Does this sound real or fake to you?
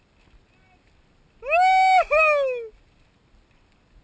real